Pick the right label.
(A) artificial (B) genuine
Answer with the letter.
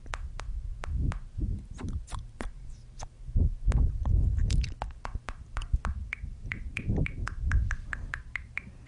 A